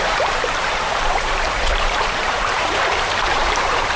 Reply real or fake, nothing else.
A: fake